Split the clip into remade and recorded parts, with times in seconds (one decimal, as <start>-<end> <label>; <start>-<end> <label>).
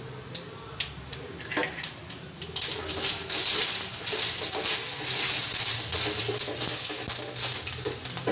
0.0-8.3 recorded